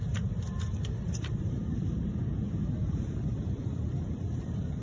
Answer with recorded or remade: remade